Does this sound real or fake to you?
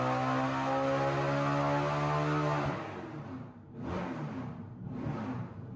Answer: real